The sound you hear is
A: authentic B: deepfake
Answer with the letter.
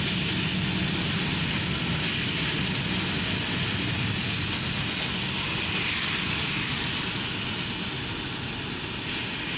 A